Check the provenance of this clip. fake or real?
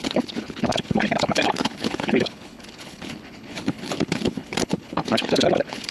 fake